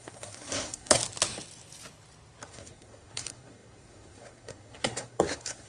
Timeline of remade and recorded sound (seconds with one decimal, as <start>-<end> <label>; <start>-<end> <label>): 0.0-1.0 remade; 1.0-2.5 recorded; 2.5-5.7 remade